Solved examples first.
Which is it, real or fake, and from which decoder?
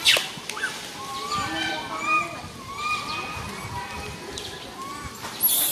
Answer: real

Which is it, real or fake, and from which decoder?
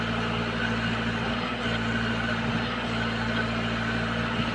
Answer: real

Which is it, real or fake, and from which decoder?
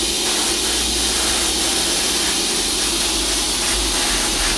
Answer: real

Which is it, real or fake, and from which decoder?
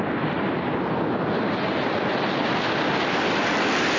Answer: real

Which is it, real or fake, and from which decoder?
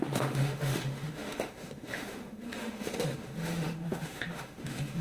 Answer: fake, autoencoder, DAC-VAE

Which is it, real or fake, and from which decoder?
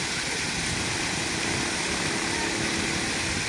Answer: real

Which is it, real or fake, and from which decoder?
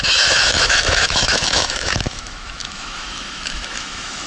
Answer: fake, autoencoder, DAC-VAE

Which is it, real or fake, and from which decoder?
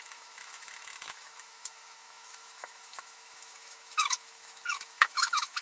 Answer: fake, autoencoder, DAC-VAE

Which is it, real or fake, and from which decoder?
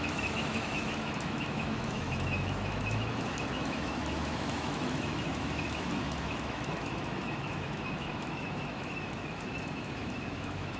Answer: fake, autoencoder, DAC-VAE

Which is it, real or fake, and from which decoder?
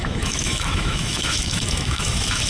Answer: fake, autoencoder, DAC-VAE